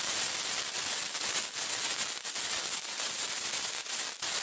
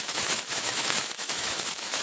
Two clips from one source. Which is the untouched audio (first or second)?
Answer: first